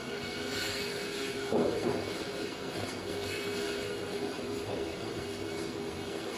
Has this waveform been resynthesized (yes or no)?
yes